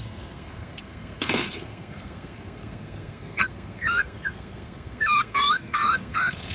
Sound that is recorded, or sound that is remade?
remade